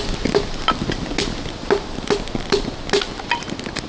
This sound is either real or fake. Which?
real